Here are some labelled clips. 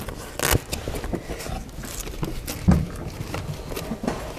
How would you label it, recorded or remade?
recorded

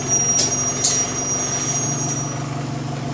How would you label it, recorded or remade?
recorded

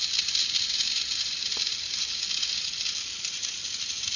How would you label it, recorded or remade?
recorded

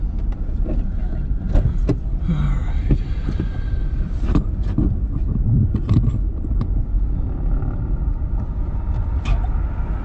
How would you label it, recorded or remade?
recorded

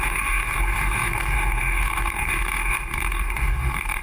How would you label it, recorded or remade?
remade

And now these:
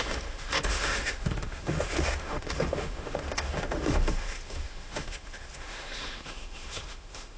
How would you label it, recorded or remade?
remade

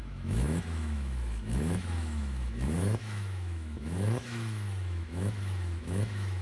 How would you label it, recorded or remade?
remade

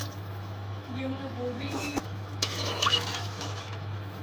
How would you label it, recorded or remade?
remade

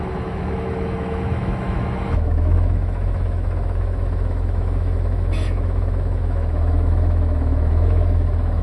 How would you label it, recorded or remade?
remade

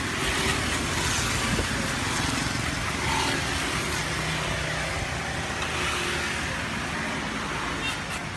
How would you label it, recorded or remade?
recorded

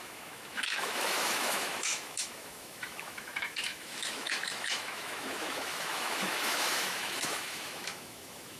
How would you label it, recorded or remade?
remade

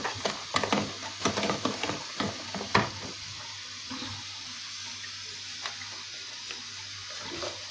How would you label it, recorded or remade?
recorded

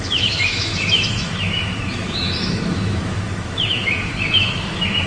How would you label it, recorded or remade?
remade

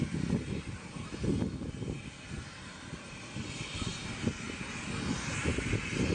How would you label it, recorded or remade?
recorded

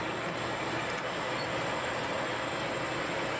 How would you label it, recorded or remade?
recorded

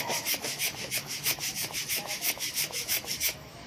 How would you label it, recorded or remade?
remade